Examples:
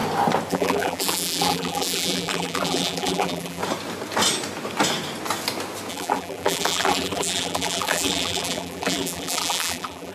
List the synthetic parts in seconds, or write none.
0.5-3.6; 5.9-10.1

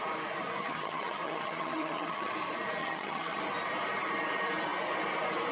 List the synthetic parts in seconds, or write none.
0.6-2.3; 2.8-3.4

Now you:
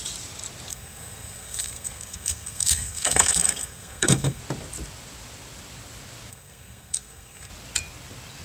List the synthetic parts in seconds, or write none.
0.7-4.4; 6.3-7.5

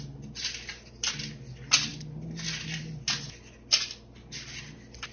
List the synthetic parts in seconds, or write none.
none

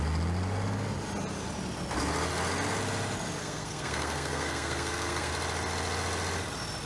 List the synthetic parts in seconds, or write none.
3.4-5.3